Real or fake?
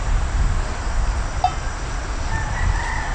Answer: real